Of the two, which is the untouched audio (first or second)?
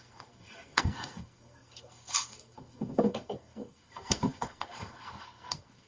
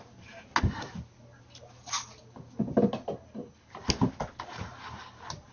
second